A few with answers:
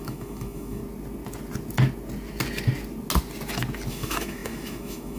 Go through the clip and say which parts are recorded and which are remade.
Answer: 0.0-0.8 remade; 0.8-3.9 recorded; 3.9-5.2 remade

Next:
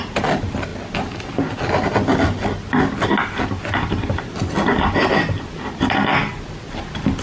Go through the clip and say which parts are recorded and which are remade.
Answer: 0.0-7.2 recorded

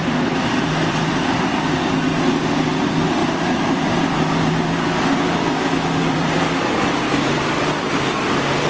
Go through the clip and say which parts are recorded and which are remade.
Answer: 0.0-1.2 remade; 1.2-3.2 recorded; 3.2-8.7 remade

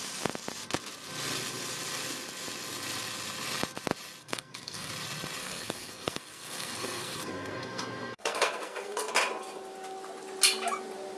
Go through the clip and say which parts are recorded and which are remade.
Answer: 0.0-4.2 recorded; 4.2-4.9 remade; 4.9-5.4 recorded; 5.4-9.1 remade; 9.1-11.2 recorded

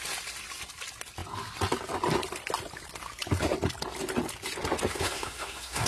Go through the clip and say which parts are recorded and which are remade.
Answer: 0.0-4.9 recorded; 4.9-5.9 remade

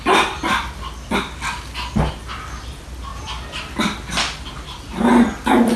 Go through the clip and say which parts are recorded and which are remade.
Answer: 0.0-5.8 recorded

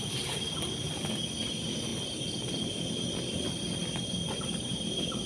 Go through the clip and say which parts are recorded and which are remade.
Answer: 0.0-3.8 recorded; 3.8-5.3 remade

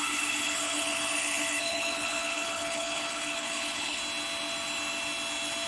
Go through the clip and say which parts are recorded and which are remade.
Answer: 0.0-4.0 remade; 4.0-5.7 recorded